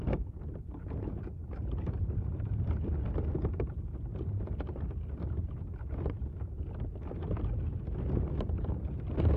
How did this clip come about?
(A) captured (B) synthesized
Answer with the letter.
A